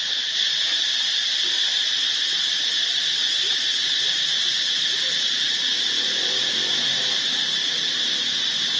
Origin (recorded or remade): recorded